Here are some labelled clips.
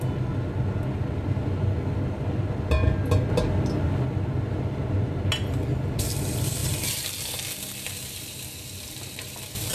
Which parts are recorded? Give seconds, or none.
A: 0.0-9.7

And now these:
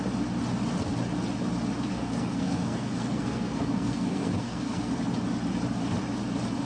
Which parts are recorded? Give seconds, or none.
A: 0.0-1.9; 4.9-6.7

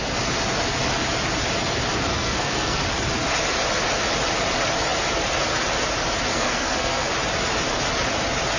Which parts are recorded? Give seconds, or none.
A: 0.0-2.1; 2.8-6.3; 7.1-8.6

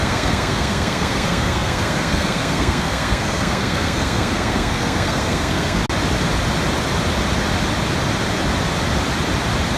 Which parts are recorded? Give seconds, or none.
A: 5.8-9.8

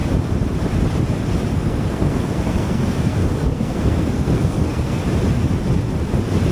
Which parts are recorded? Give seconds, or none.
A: 0.0-1.5; 5.0-6.5